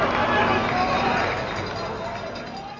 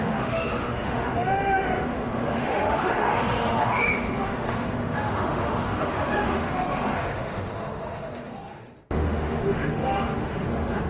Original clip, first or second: first